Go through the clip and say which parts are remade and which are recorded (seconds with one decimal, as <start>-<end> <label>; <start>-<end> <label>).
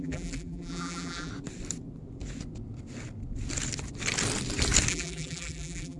0.0-1.3 remade; 1.3-4.9 recorded; 4.9-6.0 remade